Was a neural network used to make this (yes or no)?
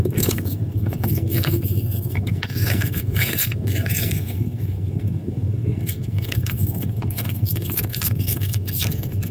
yes